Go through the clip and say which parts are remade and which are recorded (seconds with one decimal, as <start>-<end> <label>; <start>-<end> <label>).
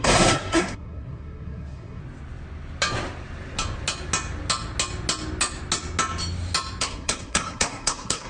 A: 0.0-2.0 remade; 2.0-6.8 recorded; 6.8-8.3 remade